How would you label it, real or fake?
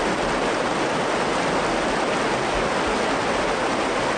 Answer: real